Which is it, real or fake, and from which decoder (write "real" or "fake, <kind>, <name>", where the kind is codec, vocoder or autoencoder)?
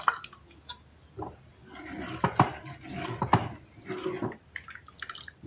real